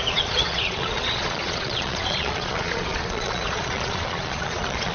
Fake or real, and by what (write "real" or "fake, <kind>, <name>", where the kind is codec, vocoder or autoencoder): fake, vocoder, Vocos